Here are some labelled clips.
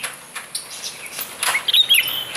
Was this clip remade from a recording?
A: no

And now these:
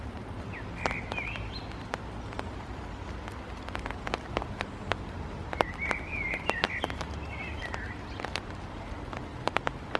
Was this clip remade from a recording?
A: yes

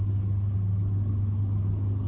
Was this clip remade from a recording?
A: no